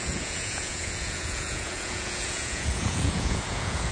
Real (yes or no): no